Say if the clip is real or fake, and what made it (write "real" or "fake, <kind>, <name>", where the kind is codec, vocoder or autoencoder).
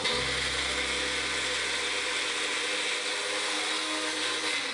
real